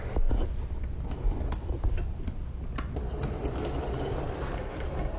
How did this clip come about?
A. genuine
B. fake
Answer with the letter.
A